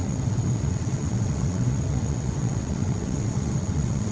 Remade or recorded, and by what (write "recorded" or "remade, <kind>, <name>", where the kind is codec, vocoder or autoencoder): remade, vocoder, WaveNeXt